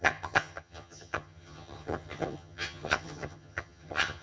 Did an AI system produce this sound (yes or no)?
yes